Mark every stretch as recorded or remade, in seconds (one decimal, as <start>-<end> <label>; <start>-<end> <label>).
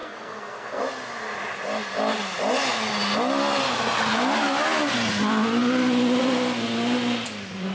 0.0-0.8 remade; 0.8-7.7 recorded